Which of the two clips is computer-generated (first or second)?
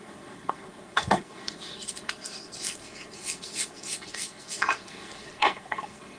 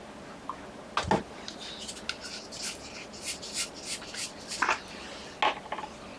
first